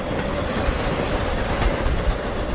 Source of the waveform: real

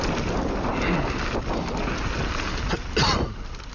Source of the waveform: real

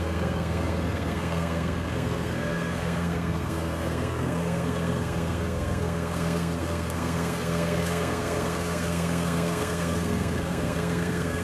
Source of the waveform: fake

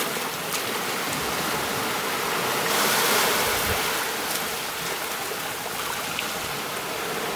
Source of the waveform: real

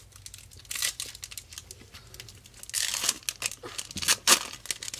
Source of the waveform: real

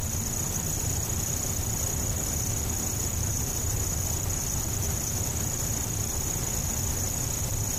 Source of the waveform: fake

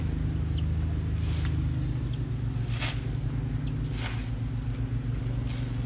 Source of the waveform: real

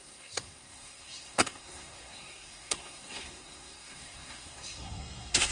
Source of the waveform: fake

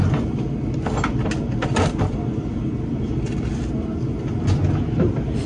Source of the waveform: real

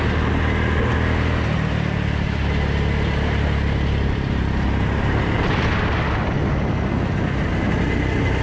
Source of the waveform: real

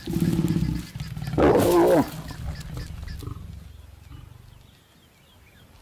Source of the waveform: real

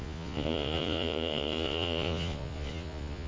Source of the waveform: fake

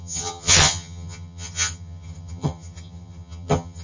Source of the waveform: fake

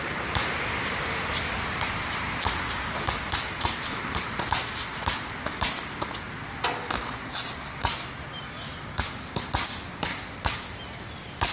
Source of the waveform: real